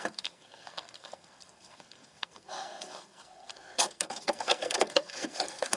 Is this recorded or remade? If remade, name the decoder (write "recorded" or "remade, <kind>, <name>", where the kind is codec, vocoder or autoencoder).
remade, codec, SNAC